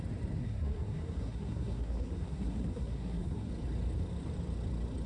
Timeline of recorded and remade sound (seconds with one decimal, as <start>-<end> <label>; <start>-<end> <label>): 0.0-0.4 recorded; 0.4-3.5 remade; 3.5-5.1 recorded